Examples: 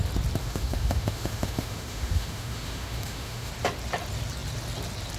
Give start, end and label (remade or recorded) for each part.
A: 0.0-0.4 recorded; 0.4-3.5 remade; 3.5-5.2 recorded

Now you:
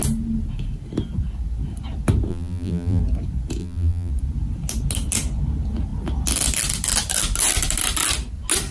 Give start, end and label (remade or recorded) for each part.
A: 0.0-2.3 recorded; 2.3-3.0 remade; 3.0-3.6 recorded; 3.6-4.1 remade; 4.1-8.7 recorded

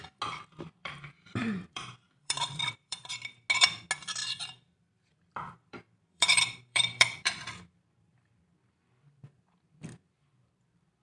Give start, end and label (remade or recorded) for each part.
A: 0.0-0.8 recorded; 0.8-3.1 remade; 3.1-4.2 recorded; 4.2-8.4 remade; 8.4-11.0 recorded

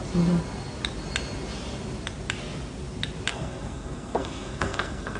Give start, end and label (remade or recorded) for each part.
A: 0.0-3.3 recorded; 3.3-5.2 remade

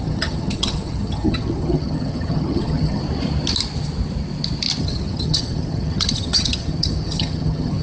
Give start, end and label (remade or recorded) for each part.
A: 0.0-3.0 remade; 3.0-4.8 recorded; 4.8-7.8 remade

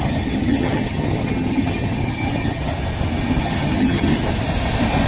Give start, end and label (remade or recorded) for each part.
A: 0.0-2.7 remade; 2.7-3.4 recorded; 3.4-4.1 remade; 4.1-5.1 recorded